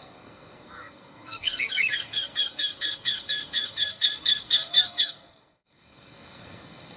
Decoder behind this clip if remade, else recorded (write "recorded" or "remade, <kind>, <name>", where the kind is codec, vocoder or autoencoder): remade, codec, SNAC